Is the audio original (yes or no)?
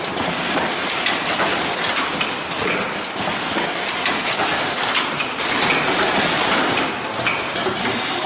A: yes